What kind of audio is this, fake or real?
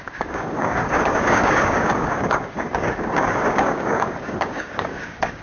fake